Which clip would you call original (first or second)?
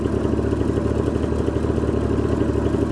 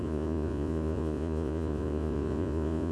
first